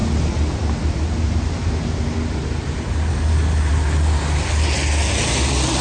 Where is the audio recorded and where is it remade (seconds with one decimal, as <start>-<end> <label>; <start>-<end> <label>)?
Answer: 0.0-3.1 recorded; 3.1-3.7 remade; 3.7-5.8 recorded